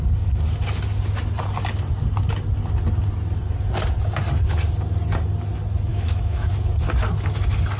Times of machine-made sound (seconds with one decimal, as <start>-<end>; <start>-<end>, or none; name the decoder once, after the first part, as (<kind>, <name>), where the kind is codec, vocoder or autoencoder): 5.9-6.5 (autoencoder, DAC-VAE)